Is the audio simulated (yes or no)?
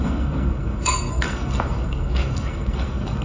yes